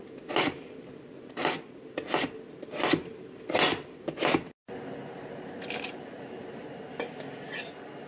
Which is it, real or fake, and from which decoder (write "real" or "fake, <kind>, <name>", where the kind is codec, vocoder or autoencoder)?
real